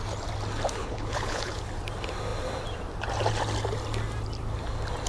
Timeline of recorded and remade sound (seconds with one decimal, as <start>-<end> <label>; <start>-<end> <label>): 0.0-0.8 recorded; 0.8-1.6 remade; 1.6-5.1 recorded